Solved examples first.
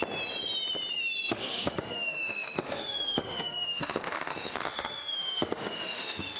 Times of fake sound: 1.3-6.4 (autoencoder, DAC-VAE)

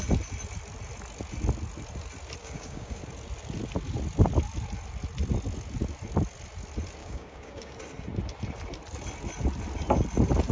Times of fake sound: 2.4-3.0 (codec, DAC); 7.0-7.7

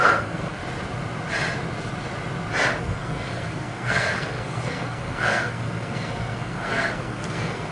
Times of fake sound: 0.0-0.6 (codec, SNAC); 2.8-7.7

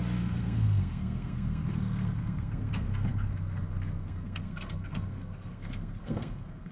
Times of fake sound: 0.0-6.7 (codec, SNAC)

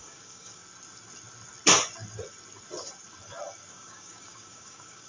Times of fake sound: 0.0-0.6 (codec, DAC); 3.7-5.1